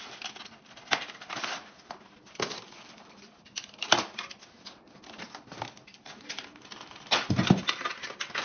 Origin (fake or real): real